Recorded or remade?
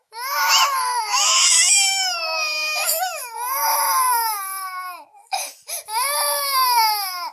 remade